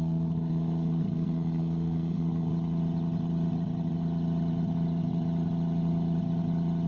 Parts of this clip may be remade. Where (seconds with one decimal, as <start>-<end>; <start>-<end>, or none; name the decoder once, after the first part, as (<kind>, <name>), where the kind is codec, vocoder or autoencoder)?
0.0-2.5 (codec, SNAC)